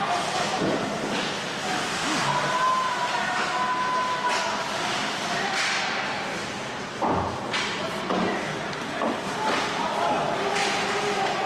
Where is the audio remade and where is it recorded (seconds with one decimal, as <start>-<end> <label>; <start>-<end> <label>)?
0.0-5.0 recorded; 5.0-7.1 remade; 7.1-11.5 recorded